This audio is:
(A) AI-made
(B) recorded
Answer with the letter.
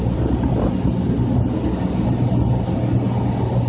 B